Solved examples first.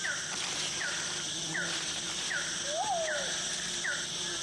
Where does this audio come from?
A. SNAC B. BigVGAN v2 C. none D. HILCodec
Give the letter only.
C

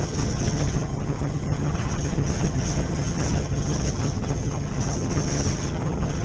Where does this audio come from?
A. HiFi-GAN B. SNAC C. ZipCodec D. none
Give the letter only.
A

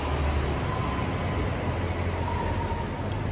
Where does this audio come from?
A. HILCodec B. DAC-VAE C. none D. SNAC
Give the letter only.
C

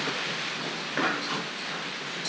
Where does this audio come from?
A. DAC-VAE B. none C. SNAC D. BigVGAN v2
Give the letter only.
B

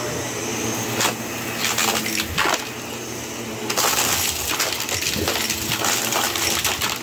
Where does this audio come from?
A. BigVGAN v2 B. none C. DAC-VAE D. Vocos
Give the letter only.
B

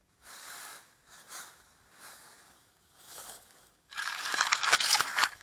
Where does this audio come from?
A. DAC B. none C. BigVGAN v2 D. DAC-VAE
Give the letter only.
A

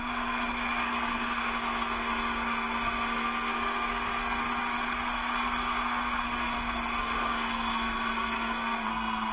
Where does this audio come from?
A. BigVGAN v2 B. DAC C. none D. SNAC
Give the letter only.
D